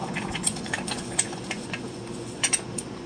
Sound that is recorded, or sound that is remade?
remade